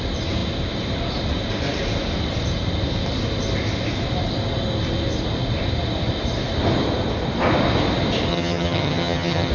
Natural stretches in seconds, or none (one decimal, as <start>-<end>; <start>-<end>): 0.0-8.3